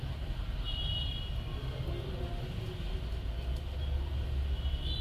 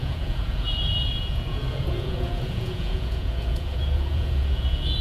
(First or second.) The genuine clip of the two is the first